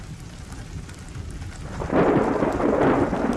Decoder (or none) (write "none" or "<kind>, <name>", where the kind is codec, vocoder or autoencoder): none